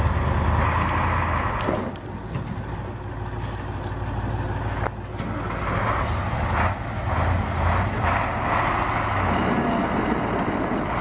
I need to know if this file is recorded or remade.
recorded